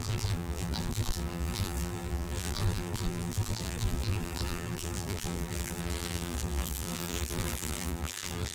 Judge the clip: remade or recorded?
remade